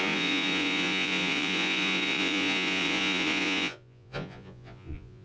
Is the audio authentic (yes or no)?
no